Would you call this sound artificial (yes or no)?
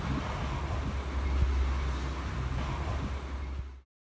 no